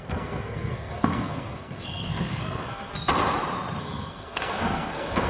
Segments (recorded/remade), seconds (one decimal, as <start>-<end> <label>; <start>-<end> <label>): 0.0-2.9 remade; 2.9-3.8 recorded; 3.8-5.3 remade